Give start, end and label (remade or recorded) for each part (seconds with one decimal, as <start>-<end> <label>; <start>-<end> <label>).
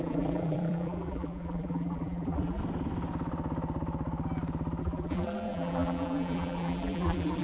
0.0-2.6 remade; 2.6-4.8 recorded; 4.8-7.4 remade